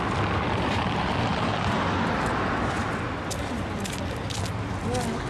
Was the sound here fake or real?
real